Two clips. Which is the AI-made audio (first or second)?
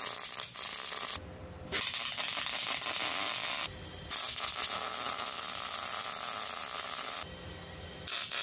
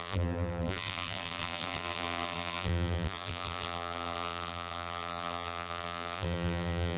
second